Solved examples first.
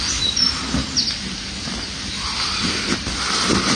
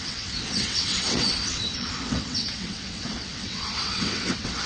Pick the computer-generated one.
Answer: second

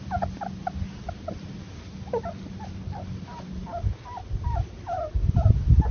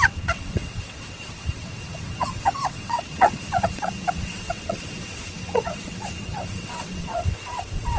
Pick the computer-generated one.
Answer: second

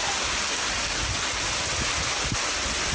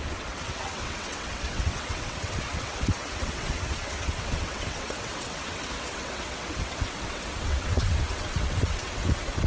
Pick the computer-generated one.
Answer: second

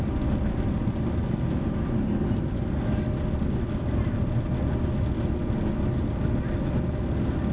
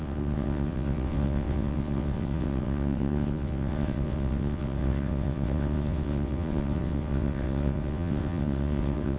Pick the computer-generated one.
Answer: second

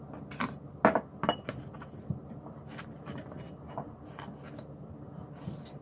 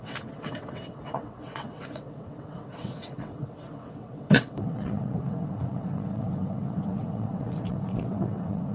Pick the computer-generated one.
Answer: second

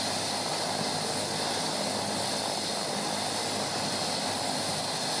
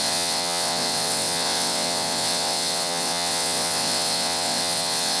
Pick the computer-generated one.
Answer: second